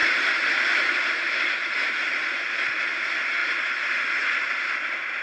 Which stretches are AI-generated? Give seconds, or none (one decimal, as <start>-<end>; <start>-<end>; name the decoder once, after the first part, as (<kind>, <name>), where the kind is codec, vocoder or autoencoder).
0.0-2.8 (vocoder, BigVGAN v2); 3.4-4.0